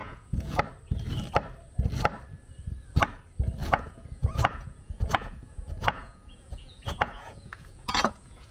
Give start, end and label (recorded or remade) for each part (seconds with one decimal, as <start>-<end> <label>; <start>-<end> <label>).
0.0-0.6 remade; 0.6-3.6 recorded; 3.6-8.5 remade